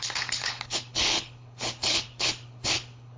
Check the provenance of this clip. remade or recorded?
remade